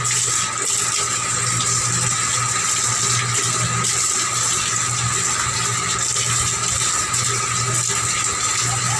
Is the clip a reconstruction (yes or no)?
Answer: no